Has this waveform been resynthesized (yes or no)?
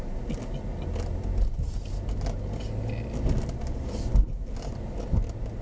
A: no